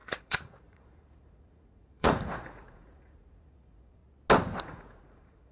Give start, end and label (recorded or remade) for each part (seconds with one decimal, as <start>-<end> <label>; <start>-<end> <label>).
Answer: 0.0-4.0 remade; 4.0-4.6 recorded; 4.6-5.5 remade